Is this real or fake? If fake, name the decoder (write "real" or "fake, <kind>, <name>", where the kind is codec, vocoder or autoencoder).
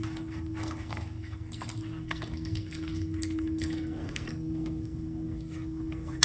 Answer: fake, codec, SNAC